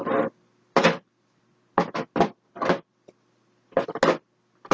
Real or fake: real